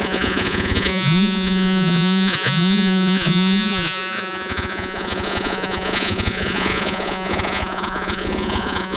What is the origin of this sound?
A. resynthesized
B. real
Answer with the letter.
A